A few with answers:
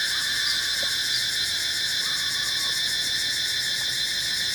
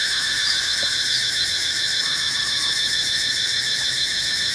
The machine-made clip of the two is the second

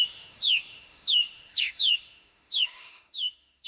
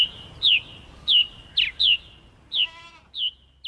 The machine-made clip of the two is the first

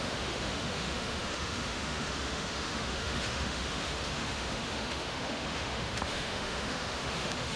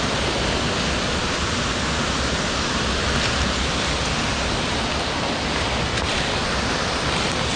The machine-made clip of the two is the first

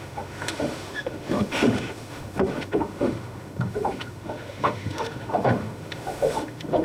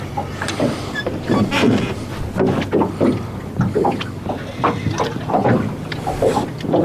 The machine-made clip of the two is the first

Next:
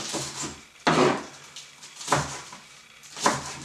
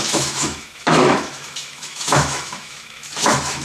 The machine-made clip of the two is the second